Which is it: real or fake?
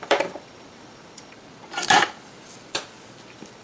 fake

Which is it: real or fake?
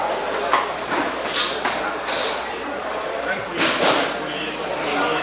fake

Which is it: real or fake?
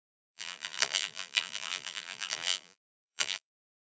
fake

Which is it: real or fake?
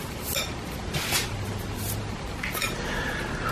real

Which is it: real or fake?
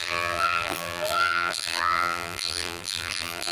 fake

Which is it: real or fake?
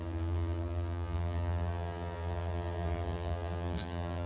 fake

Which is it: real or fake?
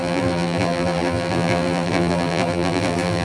fake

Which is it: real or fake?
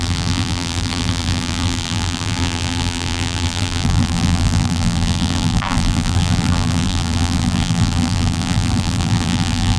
fake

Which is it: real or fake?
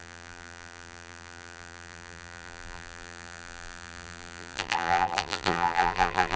fake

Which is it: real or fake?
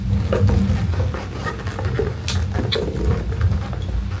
real